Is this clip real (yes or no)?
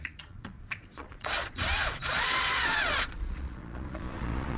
no